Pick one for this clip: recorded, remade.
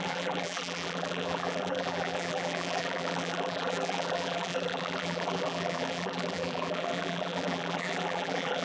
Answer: remade